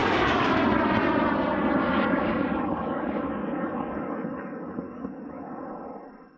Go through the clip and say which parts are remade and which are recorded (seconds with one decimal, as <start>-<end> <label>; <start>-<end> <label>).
0.0-0.6 remade; 0.6-1.8 recorded; 1.8-5.6 remade; 5.6-6.4 recorded